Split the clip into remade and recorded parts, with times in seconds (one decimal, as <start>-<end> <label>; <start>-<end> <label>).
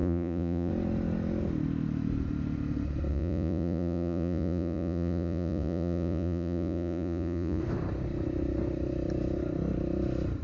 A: 0.0-0.7 remade; 0.7-3.1 recorded; 3.1-7.6 remade; 7.6-10.4 recorded